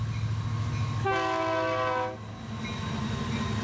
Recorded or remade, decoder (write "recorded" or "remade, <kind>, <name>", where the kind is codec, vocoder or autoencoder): recorded